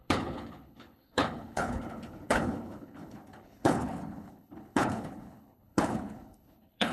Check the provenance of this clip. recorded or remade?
remade